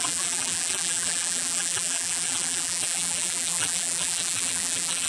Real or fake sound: fake